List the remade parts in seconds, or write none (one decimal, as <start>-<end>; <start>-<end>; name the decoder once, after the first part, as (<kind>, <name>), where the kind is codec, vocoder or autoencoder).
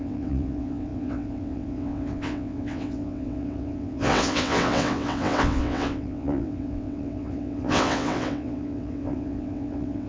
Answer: 0.0-10.1 (vocoder, WaveNeXt)